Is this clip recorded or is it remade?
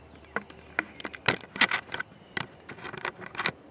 recorded